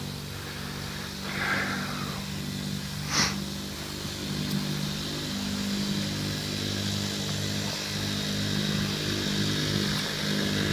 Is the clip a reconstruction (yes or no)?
no